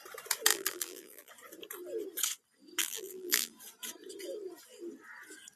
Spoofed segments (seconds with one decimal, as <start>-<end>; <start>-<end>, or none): 0.5-1.3; 2.8-3.5